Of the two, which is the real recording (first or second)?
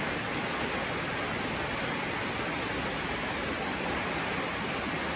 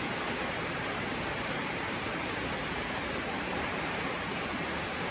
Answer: first